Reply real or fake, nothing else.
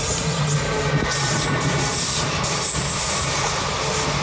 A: real